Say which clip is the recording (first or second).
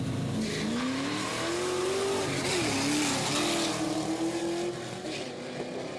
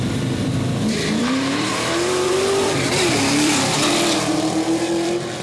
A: first